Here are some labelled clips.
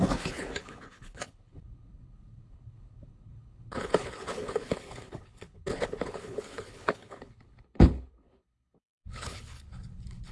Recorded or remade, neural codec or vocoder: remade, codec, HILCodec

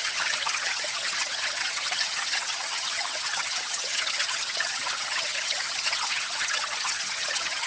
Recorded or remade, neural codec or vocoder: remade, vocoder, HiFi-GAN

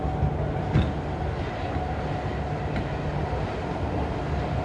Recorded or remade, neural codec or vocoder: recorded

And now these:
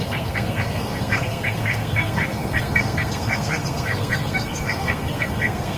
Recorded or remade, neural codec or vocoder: remade, codec, SNAC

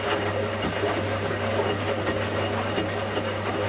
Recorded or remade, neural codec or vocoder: recorded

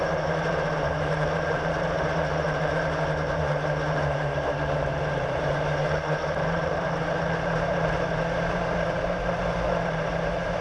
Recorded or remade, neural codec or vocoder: remade, vocoder, BigVGAN v2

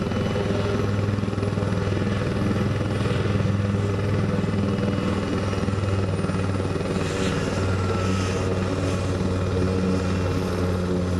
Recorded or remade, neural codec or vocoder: recorded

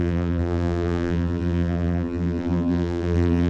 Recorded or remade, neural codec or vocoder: remade, vocoder, BigVGAN v2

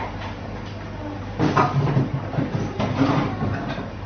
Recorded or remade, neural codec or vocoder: recorded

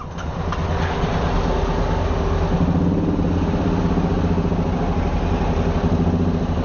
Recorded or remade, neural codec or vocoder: recorded